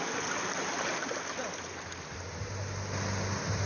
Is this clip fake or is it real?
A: real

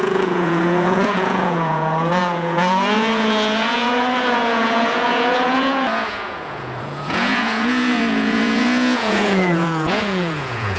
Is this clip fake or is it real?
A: fake